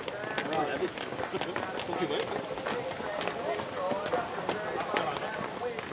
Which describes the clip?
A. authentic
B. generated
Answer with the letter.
A